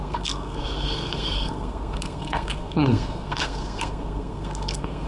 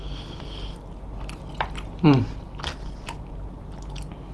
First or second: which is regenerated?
first